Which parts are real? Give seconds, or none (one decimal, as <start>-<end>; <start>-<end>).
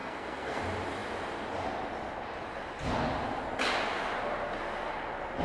0.6-5.4